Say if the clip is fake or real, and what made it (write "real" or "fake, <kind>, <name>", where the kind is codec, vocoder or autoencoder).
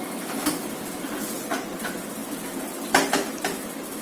real